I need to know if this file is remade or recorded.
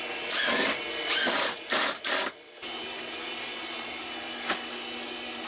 recorded